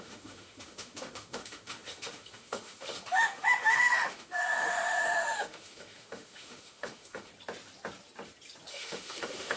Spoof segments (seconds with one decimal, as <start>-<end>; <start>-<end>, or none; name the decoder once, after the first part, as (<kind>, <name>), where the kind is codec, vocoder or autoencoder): 0.0-7.3 (autoencoder, DAC-VAE); 8.7-9.6